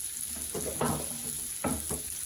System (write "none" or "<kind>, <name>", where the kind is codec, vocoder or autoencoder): none